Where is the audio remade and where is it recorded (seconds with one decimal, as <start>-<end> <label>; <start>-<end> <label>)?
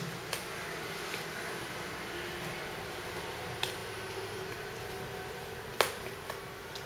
0.0-6.9 recorded